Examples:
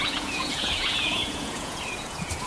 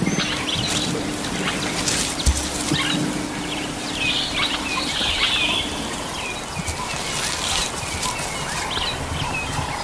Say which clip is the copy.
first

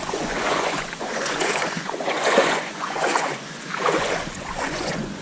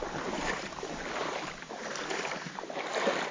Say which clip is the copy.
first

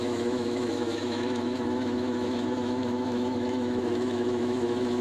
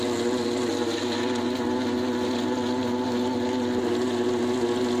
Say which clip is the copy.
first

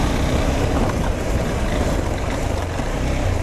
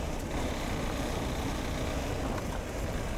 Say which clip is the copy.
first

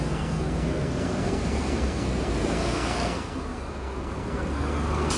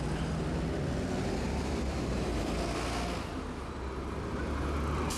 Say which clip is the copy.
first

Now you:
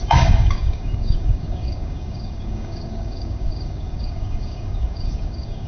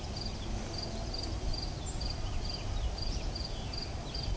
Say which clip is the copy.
first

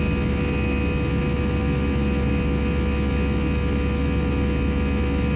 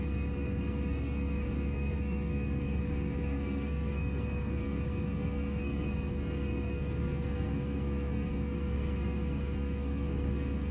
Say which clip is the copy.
second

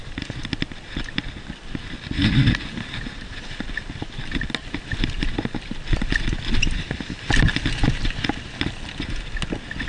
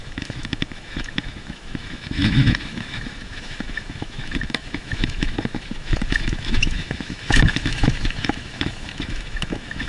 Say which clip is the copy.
second